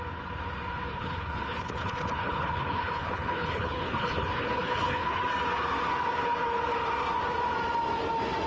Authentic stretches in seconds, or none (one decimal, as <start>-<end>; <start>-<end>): 0.0-0.9; 5.2-8.5